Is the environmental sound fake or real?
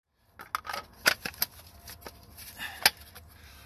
real